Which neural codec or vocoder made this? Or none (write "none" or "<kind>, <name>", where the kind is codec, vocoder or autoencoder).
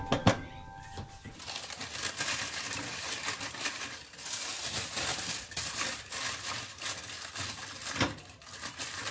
none